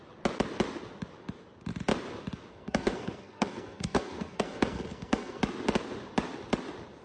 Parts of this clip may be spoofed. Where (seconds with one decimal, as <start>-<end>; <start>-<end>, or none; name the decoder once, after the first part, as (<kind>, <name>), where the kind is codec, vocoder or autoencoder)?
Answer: 2.5-5.4 (codec, SNAC)